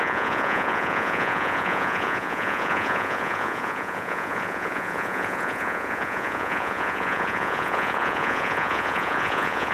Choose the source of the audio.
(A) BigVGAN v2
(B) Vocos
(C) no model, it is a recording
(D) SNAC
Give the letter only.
B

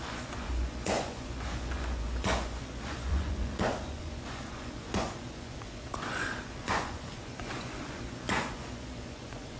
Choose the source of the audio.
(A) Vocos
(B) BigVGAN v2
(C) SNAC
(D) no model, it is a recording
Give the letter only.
A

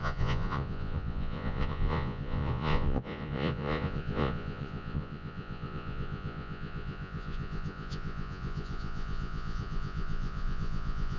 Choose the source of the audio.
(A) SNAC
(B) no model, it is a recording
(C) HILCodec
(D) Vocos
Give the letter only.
D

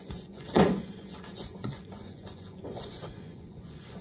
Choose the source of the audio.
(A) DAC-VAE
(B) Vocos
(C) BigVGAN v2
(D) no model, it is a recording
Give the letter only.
B